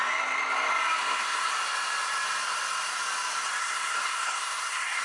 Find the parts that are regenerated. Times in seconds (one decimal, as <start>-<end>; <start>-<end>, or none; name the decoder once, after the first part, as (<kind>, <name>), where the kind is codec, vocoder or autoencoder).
1.0-1.5 (codec, SNAC); 3.6-5.0